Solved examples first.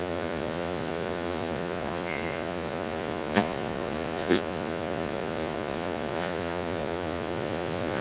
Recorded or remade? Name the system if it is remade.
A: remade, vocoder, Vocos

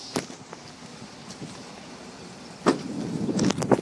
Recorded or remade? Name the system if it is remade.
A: recorded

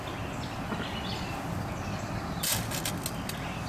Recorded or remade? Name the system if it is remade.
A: recorded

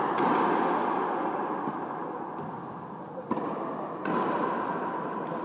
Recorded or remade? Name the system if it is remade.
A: recorded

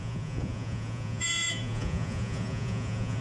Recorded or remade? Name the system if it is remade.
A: remade, vocoder, Vocos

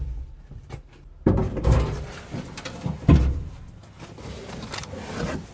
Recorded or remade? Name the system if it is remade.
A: recorded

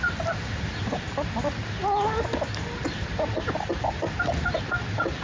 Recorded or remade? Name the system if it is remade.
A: recorded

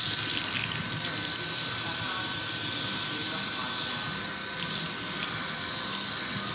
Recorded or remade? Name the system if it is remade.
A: recorded